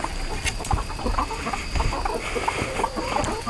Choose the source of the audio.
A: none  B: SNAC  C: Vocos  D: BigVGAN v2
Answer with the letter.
A